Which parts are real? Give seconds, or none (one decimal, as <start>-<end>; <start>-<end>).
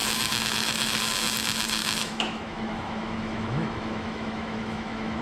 1.0-1.8